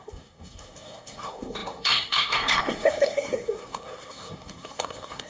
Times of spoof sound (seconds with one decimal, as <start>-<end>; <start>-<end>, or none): 0.0-5.3